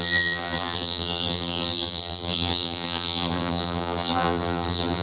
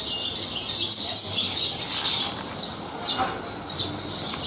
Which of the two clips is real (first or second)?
second